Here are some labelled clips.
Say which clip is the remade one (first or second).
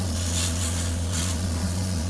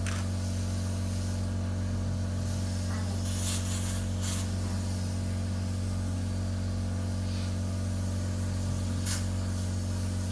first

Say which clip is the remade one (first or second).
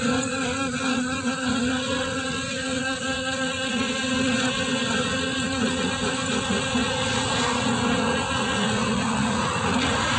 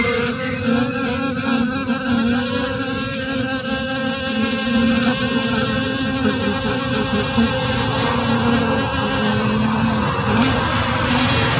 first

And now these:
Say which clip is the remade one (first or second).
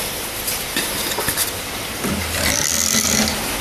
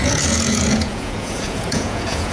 second